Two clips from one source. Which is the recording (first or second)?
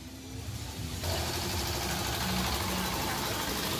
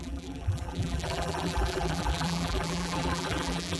first